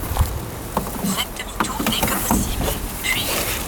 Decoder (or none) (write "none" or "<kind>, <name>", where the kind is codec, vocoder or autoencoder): vocoder, BigVGAN v2